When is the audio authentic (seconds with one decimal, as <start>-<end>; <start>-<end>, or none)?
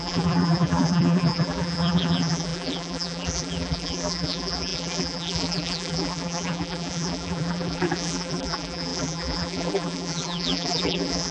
none